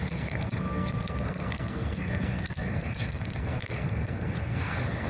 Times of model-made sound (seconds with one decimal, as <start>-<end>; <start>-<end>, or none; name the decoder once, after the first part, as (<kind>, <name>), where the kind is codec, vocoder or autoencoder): 0.0-5.1 (codec, SNAC)